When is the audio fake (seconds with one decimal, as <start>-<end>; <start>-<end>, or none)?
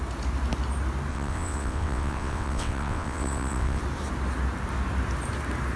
1.1-3.8